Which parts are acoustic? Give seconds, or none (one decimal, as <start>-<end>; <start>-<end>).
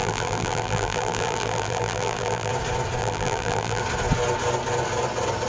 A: 2.5-3.0; 3.8-5.5